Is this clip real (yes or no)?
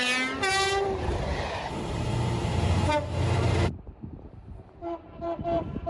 no